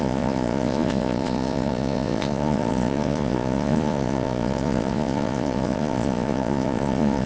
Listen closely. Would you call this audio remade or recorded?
remade